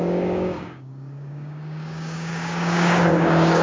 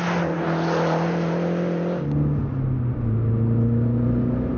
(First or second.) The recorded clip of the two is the second